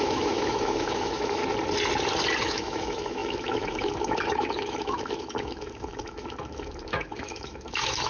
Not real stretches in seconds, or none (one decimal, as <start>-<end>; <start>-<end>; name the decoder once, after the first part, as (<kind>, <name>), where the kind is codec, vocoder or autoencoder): 0.0-1.4 (autoencoder, DAC-VAE); 2.4-8.1